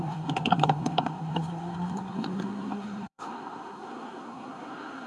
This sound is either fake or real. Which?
fake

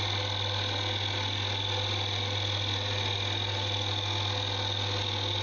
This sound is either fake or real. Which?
real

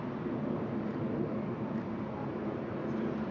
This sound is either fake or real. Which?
real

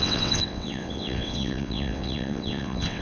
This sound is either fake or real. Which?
fake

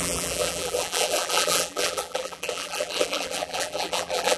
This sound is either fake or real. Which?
fake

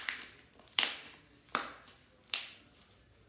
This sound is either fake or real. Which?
real